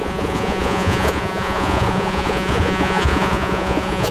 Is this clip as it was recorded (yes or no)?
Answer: no